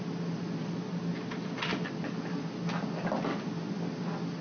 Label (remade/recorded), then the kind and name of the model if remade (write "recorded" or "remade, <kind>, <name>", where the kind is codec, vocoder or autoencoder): recorded